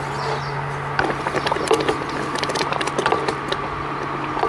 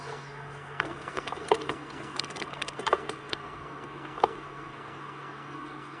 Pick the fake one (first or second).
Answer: second